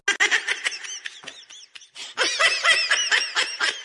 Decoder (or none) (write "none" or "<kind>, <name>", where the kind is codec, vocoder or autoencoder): none